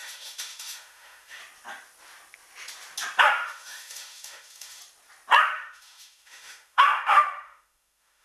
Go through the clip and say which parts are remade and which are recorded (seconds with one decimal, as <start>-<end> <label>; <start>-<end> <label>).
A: 0.0-1.4 remade; 1.4-3.2 recorded; 3.2-4.8 remade; 4.8-5.4 recorded; 5.4-8.2 remade